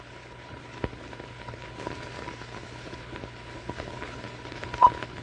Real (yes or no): no